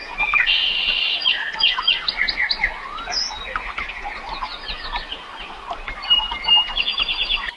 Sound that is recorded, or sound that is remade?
recorded